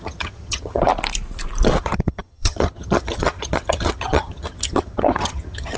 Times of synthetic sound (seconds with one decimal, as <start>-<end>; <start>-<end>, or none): 0.0-0.9; 1.8-5.8